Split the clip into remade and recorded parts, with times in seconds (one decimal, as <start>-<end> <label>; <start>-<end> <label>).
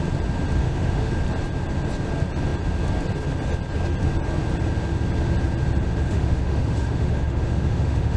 0.0-0.6 recorded; 0.6-1.1 remade; 1.1-5.8 recorded; 5.8-8.2 remade